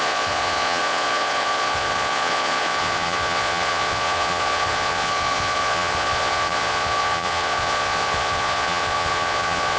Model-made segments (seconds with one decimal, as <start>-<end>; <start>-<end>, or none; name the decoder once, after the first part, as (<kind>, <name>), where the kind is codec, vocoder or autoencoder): 0.0-9.8 (vocoder, Vocos)